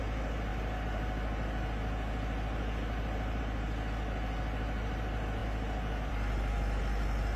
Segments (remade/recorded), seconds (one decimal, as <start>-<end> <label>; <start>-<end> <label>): 0.0-7.4 recorded